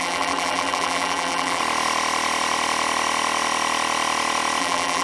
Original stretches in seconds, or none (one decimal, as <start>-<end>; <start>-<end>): 1.6-4.6